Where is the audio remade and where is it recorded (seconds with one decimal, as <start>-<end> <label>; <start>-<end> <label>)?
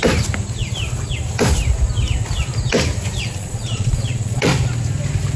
0.0-3.2 recorded; 3.2-4.5 remade; 4.5-5.4 recorded